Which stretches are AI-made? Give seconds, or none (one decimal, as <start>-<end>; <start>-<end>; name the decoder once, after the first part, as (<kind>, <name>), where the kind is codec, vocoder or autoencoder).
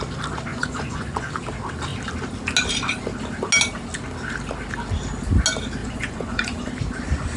0.5-1.3 (vocoder, Vocos); 5.8-6.7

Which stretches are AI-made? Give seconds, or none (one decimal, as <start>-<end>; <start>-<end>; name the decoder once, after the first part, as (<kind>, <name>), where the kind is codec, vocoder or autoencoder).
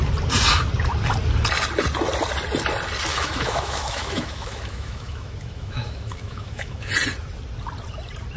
3.1-6.9 (autoencoder, DAC-VAE)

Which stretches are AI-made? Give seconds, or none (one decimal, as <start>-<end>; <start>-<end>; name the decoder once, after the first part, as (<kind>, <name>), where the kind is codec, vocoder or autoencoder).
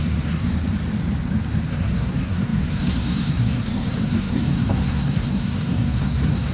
0.0-0.6 (codec, SNAC); 1.7-6.5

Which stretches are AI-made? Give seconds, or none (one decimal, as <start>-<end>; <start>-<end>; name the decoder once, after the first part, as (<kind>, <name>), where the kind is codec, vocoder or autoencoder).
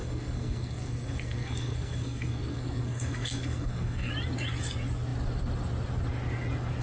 0.0-4.1 (codec, SNAC)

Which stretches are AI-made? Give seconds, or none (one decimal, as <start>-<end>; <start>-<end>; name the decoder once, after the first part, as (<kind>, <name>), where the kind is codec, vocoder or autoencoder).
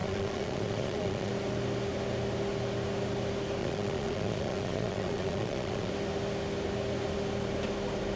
0.0-1.3 (vocoder, Vocos); 3.6-5.9